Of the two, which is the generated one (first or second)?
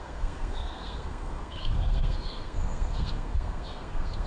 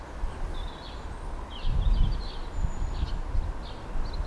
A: first